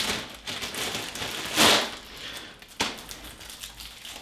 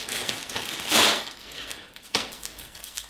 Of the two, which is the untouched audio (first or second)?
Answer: first